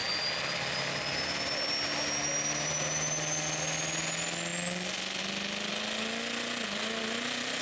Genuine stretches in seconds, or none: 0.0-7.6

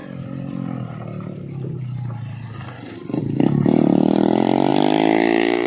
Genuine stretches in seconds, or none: 0.0-5.7